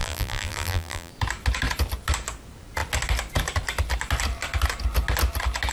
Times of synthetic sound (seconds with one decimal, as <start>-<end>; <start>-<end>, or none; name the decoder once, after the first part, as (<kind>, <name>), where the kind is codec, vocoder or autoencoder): 0.0-1.1 (vocoder, BigVGAN v2)